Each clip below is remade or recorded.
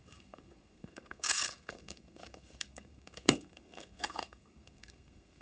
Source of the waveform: remade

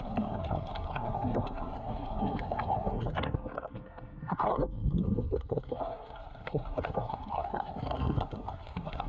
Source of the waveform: remade